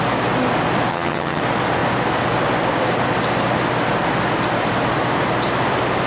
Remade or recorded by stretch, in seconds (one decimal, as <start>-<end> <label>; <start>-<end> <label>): 0.0-0.9 recorded; 0.9-1.4 remade; 1.4-6.1 recorded